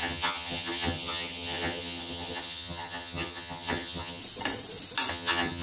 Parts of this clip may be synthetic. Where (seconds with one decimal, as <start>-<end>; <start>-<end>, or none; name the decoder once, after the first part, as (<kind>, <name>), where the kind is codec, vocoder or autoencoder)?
0.0-4.2 (vocoder, HiFi-GAN); 5.1-5.6